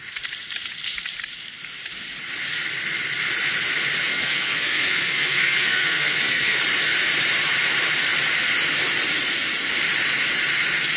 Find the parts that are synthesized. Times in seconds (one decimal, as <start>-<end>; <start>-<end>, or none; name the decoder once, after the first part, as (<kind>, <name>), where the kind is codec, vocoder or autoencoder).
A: 4.1-6.6 (codec, SNAC)